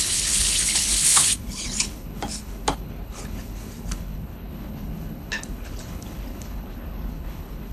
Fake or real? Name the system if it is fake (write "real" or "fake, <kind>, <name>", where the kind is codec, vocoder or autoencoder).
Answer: fake, codec, HILCodec